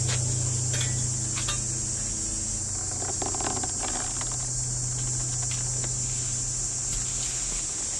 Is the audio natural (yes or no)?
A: yes